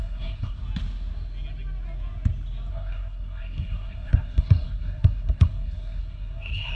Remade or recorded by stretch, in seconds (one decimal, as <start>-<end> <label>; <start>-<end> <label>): 0.0-0.6 remade; 0.6-2.7 recorded; 2.7-6.7 remade

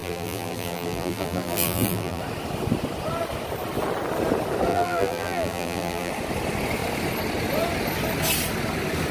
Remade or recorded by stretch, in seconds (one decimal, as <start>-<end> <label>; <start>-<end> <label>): 0.0-2.2 remade; 2.2-4.7 recorded; 4.7-6.1 remade; 6.1-9.1 recorded